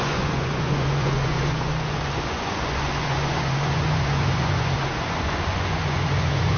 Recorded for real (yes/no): no